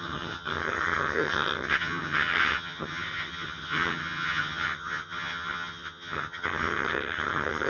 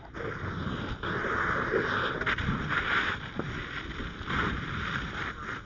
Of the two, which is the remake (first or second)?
first